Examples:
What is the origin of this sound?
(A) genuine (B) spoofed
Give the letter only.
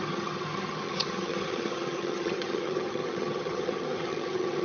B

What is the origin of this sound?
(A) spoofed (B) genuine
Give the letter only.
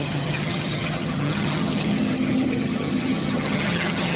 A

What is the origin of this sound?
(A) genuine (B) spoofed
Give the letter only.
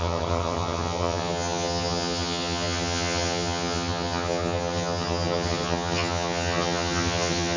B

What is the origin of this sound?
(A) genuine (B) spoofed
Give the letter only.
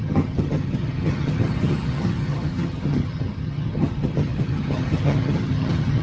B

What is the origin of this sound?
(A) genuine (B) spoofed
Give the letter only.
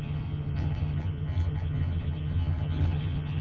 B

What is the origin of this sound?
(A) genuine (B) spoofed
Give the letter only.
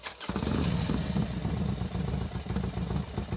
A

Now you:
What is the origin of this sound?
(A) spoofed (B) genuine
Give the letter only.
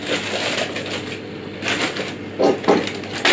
B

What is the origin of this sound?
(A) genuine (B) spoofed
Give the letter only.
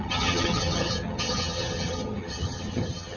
B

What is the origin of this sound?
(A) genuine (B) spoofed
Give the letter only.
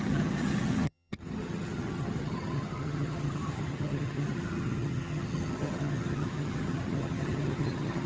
B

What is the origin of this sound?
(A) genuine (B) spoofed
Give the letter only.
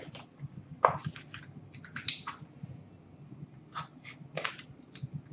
A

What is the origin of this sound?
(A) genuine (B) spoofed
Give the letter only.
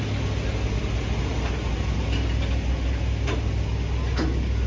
A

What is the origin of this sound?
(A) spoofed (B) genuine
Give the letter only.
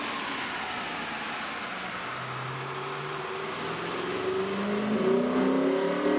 B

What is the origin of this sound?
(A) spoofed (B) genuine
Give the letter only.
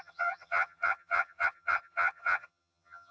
A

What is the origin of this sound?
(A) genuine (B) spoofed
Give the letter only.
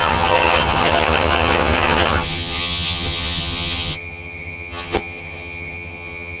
B